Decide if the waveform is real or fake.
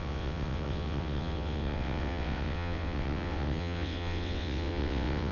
fake